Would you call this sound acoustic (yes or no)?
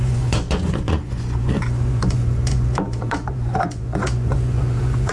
no